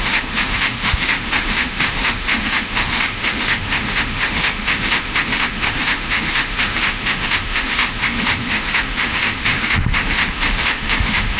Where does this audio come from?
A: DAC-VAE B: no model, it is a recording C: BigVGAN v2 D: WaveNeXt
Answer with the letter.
A